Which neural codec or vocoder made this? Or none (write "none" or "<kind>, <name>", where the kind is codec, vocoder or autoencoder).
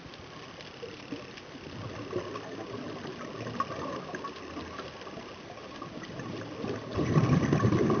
none